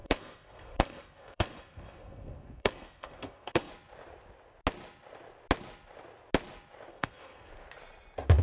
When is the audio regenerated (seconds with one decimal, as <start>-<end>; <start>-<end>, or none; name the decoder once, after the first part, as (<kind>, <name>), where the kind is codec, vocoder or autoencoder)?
0.0-3.7 (codec, SNAC); 6.9-7.5